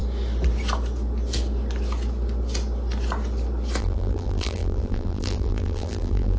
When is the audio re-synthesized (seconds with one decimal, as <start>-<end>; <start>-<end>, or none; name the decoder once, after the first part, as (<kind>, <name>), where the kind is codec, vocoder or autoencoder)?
3.8-6.4 (vocoder, BigVGAN v2)

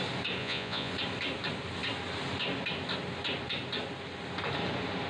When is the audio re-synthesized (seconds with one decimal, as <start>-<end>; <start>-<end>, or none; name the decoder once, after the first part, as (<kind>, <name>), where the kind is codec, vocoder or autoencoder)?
0.4-0.9 (vocoder, Vocos)

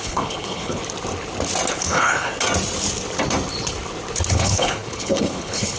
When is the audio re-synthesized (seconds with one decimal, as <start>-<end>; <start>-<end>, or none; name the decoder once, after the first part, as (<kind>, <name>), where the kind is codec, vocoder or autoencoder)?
0.0-0.8 (codec, HILCodec); 1.7-2.3; 4.3-5.8

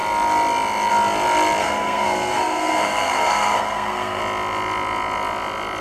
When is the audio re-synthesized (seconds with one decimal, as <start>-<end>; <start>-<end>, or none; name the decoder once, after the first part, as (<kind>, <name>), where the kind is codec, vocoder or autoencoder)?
1.6-4.2 (codec, SNAC)

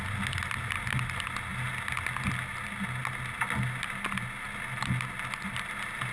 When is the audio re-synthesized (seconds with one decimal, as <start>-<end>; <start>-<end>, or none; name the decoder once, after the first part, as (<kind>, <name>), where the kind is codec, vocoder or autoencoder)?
none

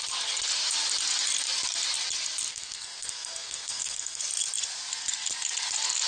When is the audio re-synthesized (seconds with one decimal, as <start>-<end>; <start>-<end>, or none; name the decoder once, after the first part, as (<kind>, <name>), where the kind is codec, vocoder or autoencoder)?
2.5-4.2 (codec, SNAC)

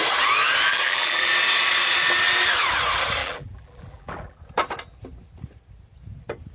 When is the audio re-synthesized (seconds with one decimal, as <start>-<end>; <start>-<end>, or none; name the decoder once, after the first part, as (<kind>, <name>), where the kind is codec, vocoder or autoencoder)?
0.7-1.3 (vocoder, BigVGAN v2); 3.2-4.4